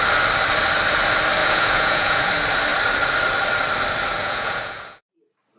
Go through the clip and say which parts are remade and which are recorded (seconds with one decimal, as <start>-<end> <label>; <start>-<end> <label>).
0.0-1.4 recorded; 1.4-2.3 remade; 2.3-4.2 recorded; 4.2-5.1 remade; 5.1-5.6 recorded